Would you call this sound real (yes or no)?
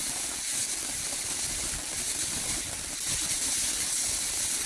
yes